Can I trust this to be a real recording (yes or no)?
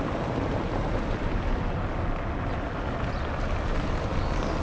yes